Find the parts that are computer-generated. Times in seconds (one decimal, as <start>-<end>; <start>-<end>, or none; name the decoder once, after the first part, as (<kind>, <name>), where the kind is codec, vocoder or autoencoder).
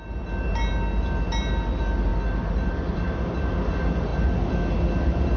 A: none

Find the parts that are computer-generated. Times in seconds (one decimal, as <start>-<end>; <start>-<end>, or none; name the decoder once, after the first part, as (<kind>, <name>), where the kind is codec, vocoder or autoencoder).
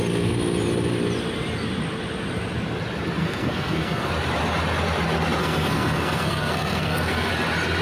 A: 3.2-4.1 (codec, SNAC); 5.4-7.3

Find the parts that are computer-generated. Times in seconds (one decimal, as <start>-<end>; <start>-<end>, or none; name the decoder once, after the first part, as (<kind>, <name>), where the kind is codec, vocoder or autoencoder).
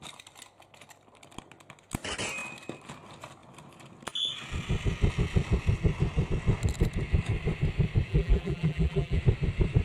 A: 8.1-9.2 (vocoder, BigVGAN v2)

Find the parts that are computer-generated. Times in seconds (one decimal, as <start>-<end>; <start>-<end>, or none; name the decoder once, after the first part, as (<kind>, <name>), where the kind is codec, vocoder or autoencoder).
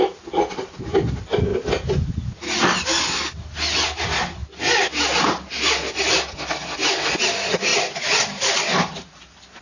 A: none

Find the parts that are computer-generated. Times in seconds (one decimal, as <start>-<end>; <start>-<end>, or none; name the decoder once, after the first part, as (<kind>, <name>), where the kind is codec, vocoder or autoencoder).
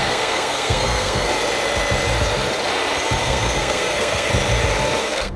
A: 0.0-1.3 (codec, SNAC); 3.2-4.3; 5.0-5.4